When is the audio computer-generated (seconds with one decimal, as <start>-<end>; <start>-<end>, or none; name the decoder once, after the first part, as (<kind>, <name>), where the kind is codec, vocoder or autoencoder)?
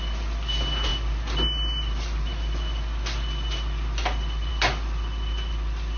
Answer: none